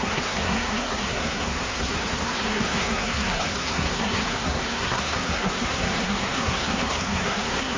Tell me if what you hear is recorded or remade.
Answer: remade